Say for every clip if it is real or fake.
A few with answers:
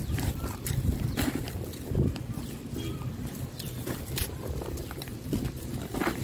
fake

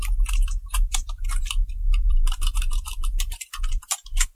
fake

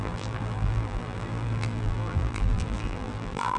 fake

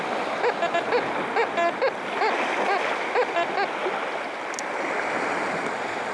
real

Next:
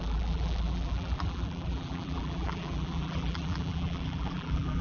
fake